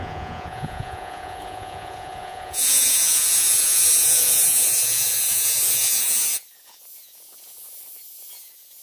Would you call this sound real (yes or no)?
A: no